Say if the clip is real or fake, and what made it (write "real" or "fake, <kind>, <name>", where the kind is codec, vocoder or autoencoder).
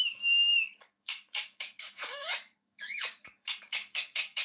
fake, codec, DAC